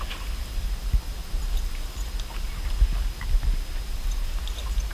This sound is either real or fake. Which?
real